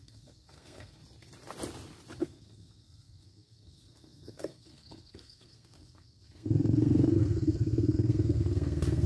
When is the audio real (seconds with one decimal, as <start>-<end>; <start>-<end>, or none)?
1.0-2.2